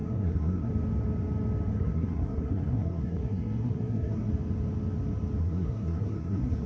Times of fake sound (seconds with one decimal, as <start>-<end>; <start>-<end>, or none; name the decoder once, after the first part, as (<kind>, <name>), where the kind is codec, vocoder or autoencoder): 0.0-0.7 (codec, SNAC); 1.7-4.3; 5.4-6.7